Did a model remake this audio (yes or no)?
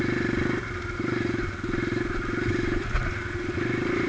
no